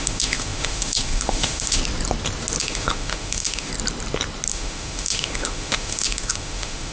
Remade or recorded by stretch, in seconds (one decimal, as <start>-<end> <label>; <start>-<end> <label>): 0.0-1.8 remade; 1.8-2.6 recorded; 2.6-3.7 remade; 3.7-4.5 recorded; 4.5-6.9 remade